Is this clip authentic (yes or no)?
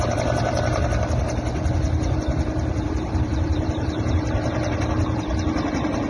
no